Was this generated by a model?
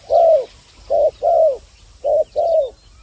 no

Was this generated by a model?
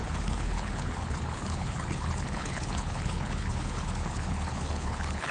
yes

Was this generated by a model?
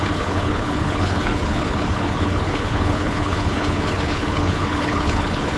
yes